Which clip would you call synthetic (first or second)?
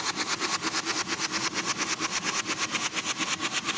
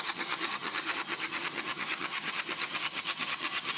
second